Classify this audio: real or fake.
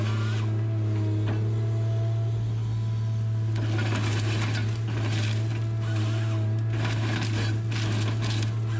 real